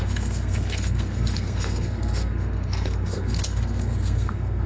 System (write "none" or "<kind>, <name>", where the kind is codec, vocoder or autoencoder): codec, SNAC